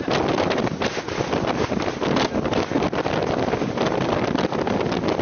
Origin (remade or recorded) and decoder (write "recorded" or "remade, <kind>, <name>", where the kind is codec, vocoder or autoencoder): recorded